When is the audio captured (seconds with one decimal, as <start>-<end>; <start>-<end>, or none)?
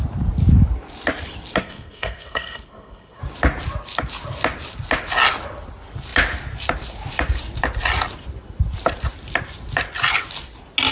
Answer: 0.0-1.6; 3.2-10.9